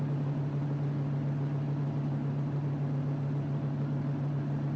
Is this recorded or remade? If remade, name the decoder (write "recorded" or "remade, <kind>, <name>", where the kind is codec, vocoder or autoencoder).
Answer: recorded